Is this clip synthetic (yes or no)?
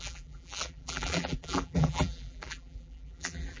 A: yes